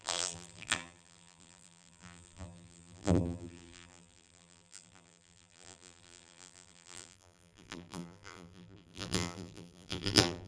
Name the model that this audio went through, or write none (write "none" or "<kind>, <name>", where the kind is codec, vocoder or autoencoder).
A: vocoder, BigVGAN v2